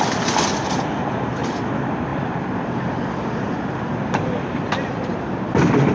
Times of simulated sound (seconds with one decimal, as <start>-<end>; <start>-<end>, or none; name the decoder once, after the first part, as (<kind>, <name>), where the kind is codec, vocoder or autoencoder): 0.0-2.1 (vocoder, BigVGAN v2); 2.6-5.9